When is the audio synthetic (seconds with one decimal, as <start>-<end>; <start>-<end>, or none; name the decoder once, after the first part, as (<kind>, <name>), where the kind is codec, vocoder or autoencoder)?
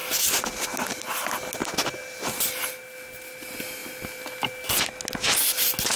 none